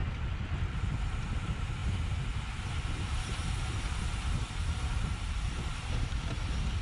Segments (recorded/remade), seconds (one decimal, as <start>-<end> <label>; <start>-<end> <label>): 0.0-0.8 remade; 0.8-5.7 recorded; 5.7-6.2 remade; 6.2-6.8 recorded